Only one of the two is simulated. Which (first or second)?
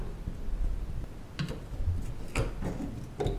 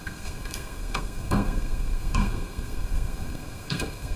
second